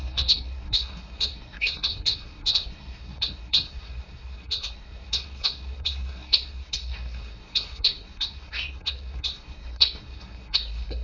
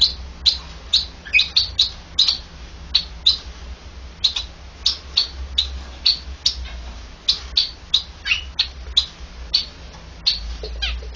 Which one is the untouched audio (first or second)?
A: second